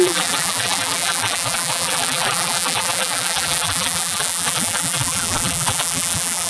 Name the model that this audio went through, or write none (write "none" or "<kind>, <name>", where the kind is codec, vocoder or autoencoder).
vocoder, BigVGAN v2